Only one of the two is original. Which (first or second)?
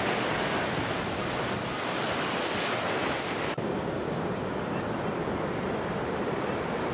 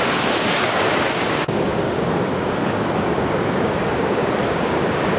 first